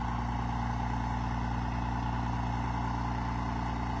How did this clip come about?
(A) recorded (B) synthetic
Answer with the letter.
A